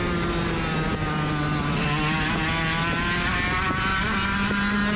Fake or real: real